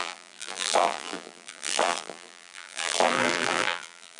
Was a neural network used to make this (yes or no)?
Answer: yes